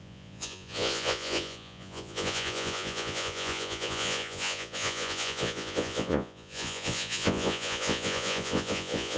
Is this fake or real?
fake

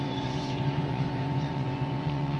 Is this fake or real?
fake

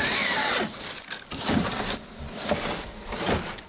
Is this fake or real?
real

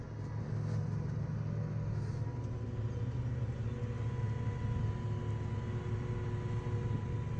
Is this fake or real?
real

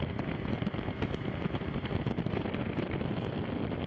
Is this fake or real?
real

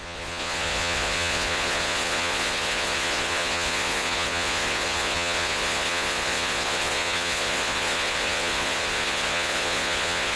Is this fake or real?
fake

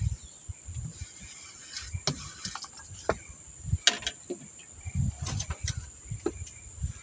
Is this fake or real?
real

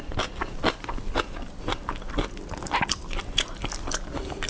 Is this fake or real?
real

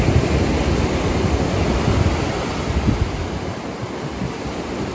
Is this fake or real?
real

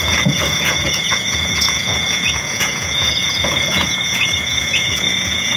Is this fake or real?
fake